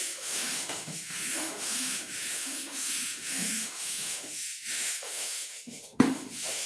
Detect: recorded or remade remade